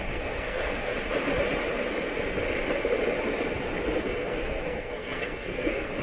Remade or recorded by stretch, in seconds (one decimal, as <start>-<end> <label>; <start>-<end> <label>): 0.0-0.9 remade; 0.9-4.0 recorded; 4.0-6.0 remade